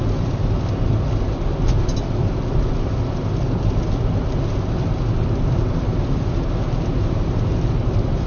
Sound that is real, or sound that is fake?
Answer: real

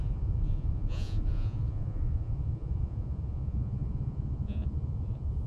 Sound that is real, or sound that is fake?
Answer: fake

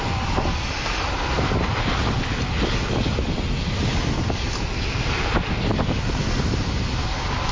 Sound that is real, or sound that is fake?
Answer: real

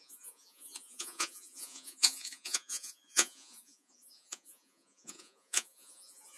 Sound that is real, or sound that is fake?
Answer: fake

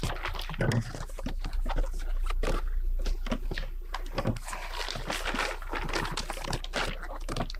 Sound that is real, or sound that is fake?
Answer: real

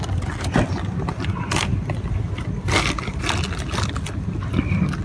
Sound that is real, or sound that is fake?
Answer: real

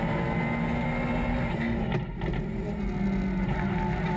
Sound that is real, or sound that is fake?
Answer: real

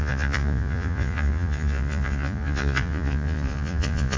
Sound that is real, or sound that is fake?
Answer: fake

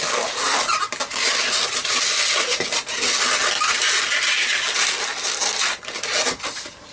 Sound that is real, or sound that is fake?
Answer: real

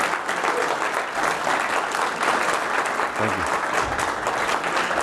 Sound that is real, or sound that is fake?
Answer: real